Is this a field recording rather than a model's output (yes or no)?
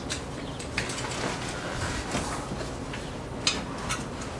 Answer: yes